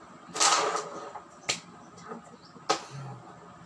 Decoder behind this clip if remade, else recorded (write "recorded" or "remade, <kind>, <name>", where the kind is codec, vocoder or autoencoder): recorded